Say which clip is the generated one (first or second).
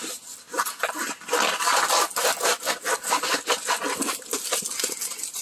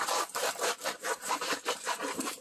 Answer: second